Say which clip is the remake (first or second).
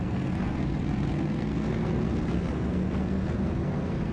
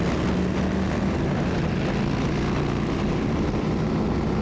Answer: first